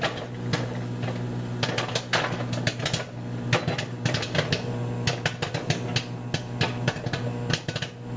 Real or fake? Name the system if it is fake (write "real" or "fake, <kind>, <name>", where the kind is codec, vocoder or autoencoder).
real